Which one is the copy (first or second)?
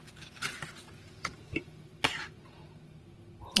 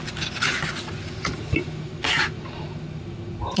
first